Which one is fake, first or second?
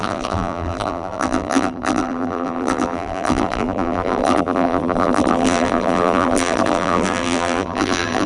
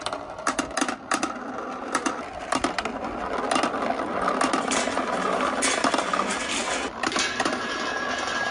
first